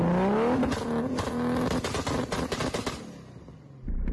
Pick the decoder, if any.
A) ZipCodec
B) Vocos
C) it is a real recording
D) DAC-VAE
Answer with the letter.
C